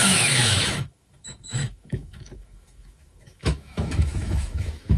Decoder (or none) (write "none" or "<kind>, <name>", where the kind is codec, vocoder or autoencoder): autoencoder, DAC-VAE